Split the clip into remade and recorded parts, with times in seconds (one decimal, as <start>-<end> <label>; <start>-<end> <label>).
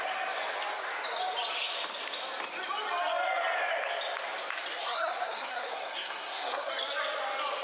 0.0-4.8 recorded; 4.8-6.7 remade; 6.7-7.6 recorded